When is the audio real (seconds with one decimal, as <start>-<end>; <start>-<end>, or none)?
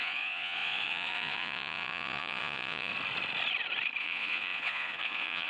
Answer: 2.9-4.0